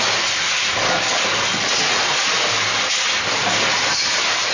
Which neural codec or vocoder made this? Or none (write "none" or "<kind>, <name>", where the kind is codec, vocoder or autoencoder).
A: none